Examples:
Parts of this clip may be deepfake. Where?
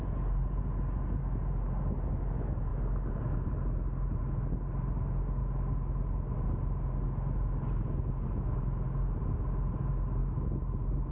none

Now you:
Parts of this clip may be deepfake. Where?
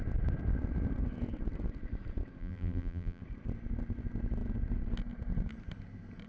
2.4-3.2 (vocoder, BigVGAN v2)